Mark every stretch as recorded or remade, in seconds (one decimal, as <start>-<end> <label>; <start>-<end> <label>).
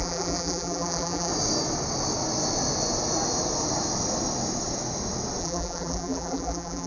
0.0-1.3 remade; 1.3-5.4 recorded; 5.4-6.9 remade